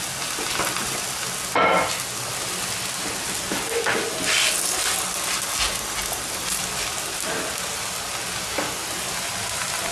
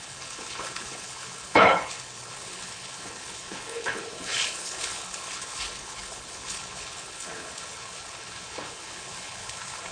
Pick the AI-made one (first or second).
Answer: second